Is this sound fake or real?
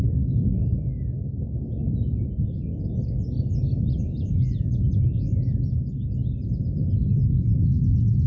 real